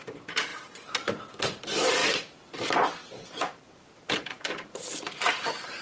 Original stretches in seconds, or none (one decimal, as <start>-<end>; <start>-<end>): none